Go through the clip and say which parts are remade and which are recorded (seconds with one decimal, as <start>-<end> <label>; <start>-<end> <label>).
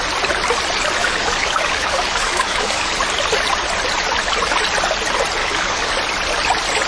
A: 0.0-1.0 recorded; 1.0-2.9 remade; 2.9-5.4 recorded; 5.4-5.9 remade; 5.9-6.9 recorded